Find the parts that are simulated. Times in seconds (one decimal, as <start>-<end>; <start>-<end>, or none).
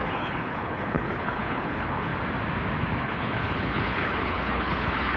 0.0-2.1; 3.0-5.2